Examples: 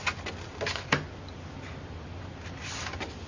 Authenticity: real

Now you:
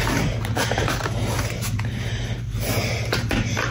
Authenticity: real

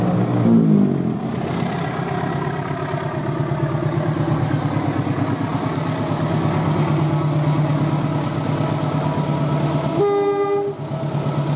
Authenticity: real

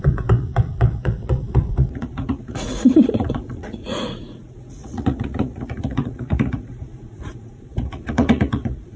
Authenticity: fake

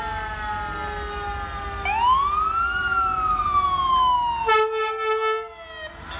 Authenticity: real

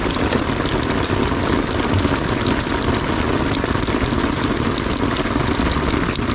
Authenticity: real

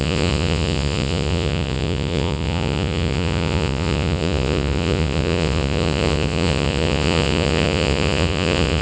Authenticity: fake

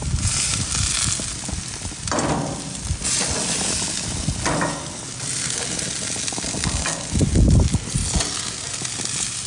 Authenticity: real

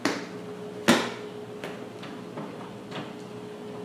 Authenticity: real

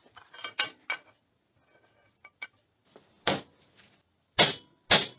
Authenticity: real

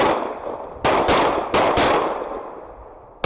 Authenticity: real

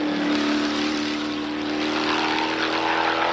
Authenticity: real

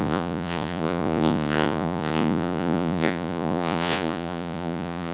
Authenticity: fake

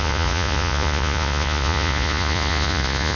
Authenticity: fake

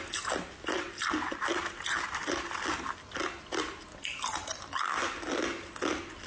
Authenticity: real